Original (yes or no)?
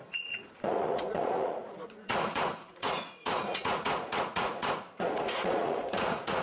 no